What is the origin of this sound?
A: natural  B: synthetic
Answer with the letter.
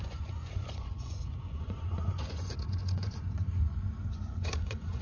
B